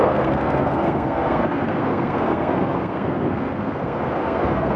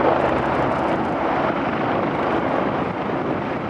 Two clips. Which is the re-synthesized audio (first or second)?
first